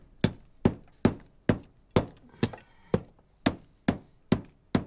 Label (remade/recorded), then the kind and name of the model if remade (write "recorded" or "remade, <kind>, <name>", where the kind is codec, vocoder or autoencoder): recorded